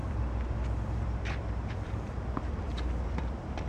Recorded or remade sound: remade